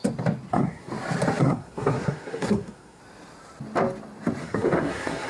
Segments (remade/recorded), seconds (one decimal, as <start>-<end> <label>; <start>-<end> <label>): 0.0-0.5 recorded; 0.5-0.9 remade; 0.9-1.4 recorded; 1.4-3.0 remade; 3.0-4.4 recorded; 4.4-5.3 remade